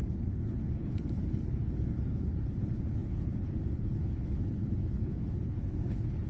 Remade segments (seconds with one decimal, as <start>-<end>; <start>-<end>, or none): 0.0-6.3